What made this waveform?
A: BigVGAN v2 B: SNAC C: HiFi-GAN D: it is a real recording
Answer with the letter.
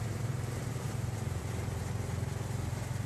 A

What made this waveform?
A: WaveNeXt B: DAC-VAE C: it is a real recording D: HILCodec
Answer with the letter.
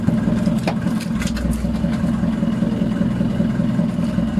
C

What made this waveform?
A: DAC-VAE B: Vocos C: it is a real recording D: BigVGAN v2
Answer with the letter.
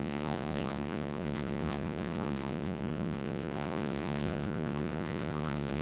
B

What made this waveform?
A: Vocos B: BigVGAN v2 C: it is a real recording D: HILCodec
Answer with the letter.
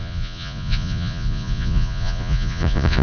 A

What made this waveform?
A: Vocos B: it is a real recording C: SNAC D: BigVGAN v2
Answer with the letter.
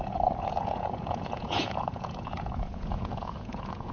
A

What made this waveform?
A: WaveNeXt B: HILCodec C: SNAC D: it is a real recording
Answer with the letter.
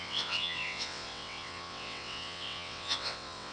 A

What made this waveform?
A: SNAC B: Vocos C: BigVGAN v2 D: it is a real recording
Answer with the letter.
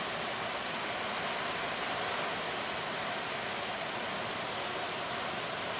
D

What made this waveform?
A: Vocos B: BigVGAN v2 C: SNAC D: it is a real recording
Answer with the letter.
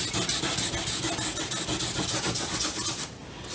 D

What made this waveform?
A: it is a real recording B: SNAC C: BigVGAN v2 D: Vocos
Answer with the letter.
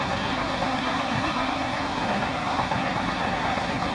B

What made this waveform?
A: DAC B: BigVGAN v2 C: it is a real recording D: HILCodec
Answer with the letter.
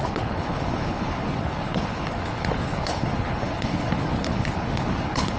D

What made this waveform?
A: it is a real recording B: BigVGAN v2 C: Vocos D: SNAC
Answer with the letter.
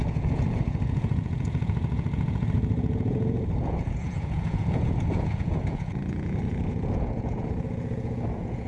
C